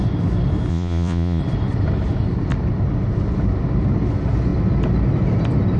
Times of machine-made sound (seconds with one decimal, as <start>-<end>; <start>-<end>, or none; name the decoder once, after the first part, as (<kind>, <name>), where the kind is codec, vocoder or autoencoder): 0.7-1.4 (vocoder, Vocos)